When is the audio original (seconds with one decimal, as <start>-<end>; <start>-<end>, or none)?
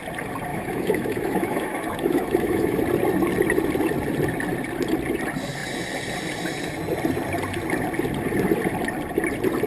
0.0-0.5; 2.8-9.7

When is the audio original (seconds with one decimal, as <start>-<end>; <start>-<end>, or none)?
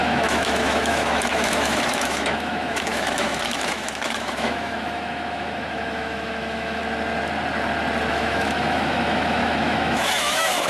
6.8-8.1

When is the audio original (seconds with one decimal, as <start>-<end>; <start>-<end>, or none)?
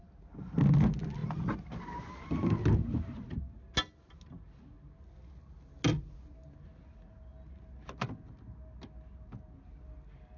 0.0-10.4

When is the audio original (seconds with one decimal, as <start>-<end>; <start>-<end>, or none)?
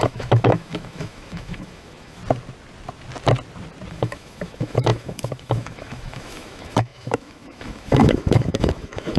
2.2-3.9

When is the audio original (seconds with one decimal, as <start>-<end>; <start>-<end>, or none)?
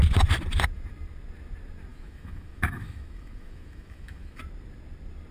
0.0-1.9; 4.4-5.3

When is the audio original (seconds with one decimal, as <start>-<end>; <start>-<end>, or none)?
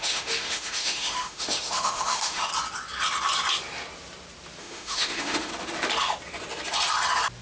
2.5-4.6; 5.5-7.4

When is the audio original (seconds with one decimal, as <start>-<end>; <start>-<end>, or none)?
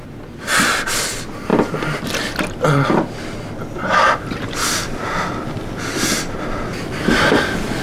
0.0-7.8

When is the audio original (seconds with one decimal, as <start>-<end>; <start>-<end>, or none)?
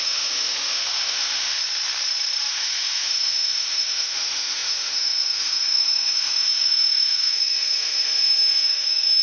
1.6-2.5